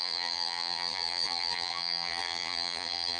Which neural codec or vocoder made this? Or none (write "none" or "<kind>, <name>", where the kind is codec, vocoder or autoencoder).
vocoder, BigVGAN v2